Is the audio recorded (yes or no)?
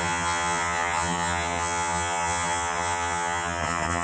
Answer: no